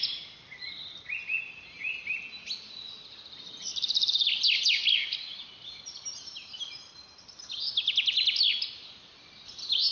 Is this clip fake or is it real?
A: real